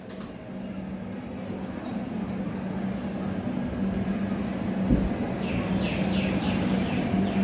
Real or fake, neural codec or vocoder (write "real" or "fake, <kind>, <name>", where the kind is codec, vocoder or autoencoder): real